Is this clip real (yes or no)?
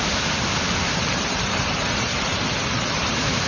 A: no